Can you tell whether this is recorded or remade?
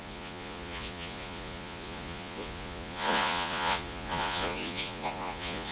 remade